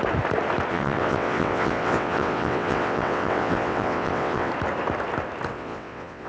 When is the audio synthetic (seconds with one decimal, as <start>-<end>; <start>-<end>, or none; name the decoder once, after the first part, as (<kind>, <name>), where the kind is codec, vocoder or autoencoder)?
0.7-4.5 (vocoder, WaveNeXt); 5.5-6.3